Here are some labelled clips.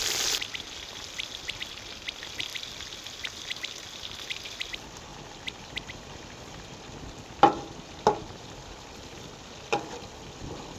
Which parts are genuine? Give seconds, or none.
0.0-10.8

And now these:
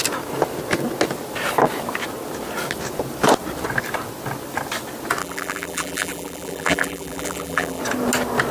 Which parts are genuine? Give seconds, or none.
0.0-5.2; 7.8-8.5

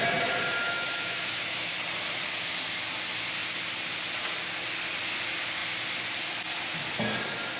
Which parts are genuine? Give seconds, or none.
0.0-0.6; 1.7-7.6